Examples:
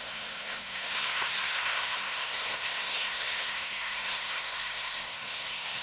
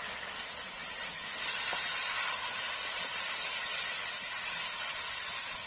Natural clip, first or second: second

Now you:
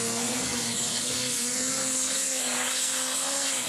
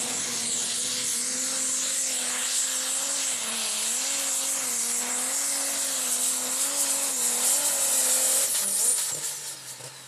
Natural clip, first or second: second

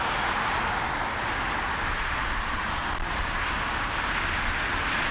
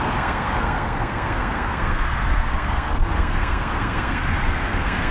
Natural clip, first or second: first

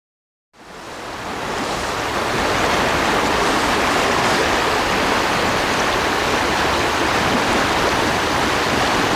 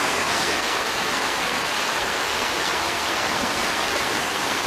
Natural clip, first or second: first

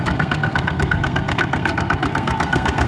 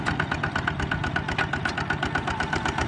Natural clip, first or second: second